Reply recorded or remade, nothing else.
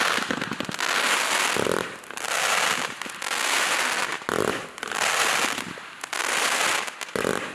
recorded